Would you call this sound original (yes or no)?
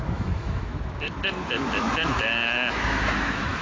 no